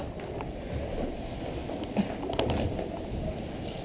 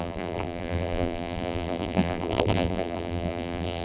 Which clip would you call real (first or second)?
first